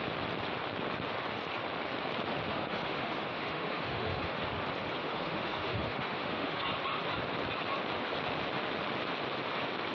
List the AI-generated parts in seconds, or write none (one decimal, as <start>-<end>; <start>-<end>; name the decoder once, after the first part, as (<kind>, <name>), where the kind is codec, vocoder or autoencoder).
2.5-4.4 (autoencoder, DAC-VAE); 5.0-6.6